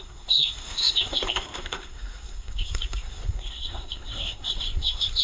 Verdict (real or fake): fake